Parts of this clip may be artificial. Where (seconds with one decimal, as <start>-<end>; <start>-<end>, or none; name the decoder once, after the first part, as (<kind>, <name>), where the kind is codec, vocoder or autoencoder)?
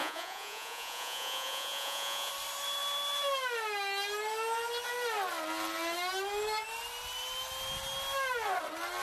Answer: 0.0-2.3 (vocoder, Vocos)